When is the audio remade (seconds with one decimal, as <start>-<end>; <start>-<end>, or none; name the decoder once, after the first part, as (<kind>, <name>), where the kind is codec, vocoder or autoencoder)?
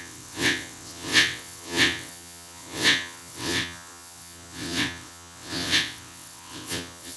0.0-7.2 (vocoder, WaveNeXt)